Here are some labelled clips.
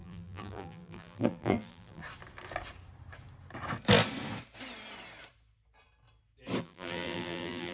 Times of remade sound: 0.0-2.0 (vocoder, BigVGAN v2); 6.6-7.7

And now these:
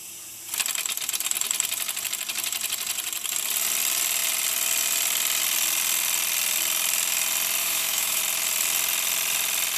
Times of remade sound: 7.6-8.2 (autoencoder, DAC-VAE)

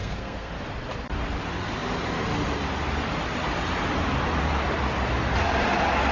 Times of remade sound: 0.0-0.5 (codec, SNAC)

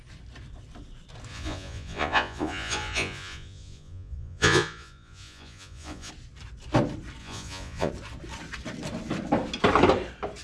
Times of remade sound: 1.3-6.1 (vocoder, Vocos); 7.2-7.9

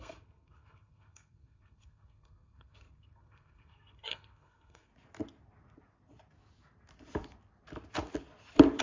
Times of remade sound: 0.0-4.9 (codec, SNAC)

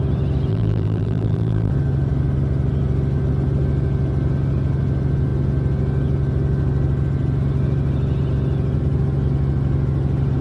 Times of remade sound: 0.5-1.7 (vocoder, BigVGAN v2)

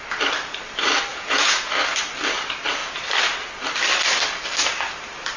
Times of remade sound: 1.1-1.7 (vocoder, Vocos)